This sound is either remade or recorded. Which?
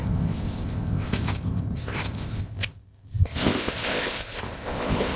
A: remade